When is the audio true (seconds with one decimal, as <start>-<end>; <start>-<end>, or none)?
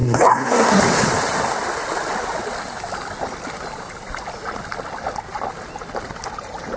0.8-6.8